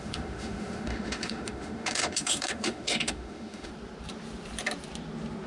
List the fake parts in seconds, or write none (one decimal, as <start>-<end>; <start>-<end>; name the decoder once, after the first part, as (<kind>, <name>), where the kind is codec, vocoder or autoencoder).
0.0-3.7 (autoencoder, DAC-VAE)